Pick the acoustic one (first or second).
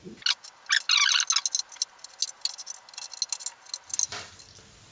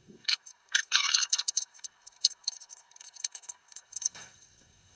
first